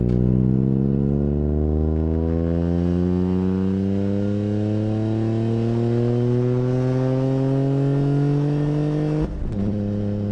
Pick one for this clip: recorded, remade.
recorded